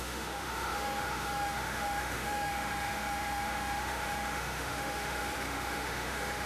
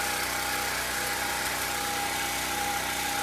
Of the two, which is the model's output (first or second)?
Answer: first